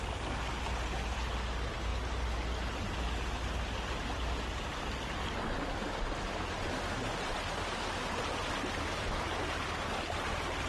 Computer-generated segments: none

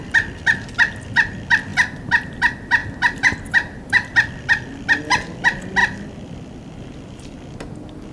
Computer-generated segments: 1.7-2.4 (vocoder, BigVGAN v2); 2.8-5.0; 5.8-6.7

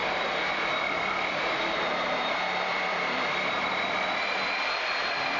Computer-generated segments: 0.0-5.4 (vocoder, BigVGAN v2)

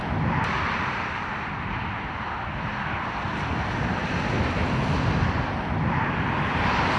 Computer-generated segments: none

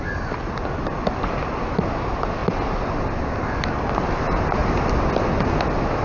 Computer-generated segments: 4.6-5.1 (vocoder, BigVGAN v2)

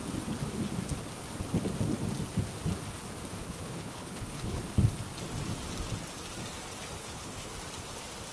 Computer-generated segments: 3.4-4.6 (codec, HILCodec); 7.0-7.5